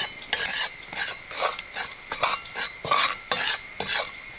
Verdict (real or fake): real